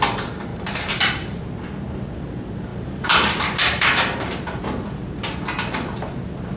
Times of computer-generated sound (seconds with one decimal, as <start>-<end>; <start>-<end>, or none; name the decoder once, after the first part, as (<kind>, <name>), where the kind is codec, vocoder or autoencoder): 0.5-1.4 (vocoder, BigVGAN v2); 2.7-4.6